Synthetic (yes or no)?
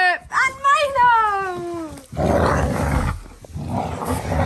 no